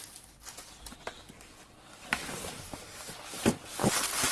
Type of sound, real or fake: real